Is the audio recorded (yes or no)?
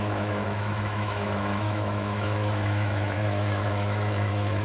no